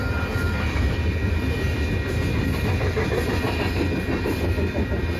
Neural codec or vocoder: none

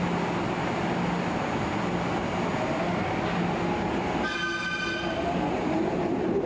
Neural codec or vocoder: none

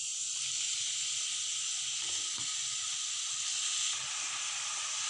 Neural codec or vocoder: none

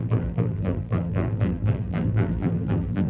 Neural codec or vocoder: vocoder, BigVGAN v2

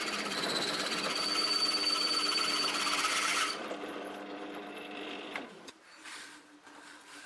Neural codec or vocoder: vocoder, BigVGAN v2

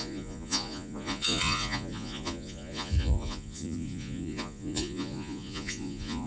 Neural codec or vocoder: vocoder, Vocos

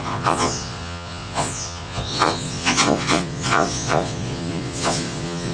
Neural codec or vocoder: vocoder, Vocos